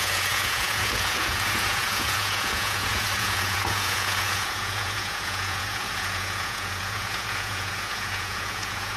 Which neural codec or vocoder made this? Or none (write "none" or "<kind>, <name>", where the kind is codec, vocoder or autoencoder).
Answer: vocoder, Vocos